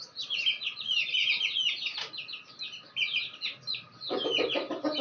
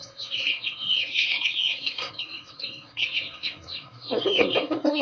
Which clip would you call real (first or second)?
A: first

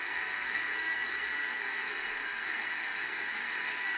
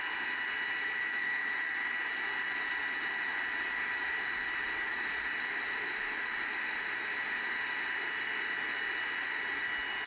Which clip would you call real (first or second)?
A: second